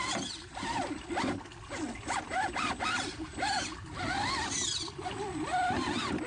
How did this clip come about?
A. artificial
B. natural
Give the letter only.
B